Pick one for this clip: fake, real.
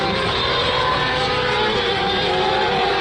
real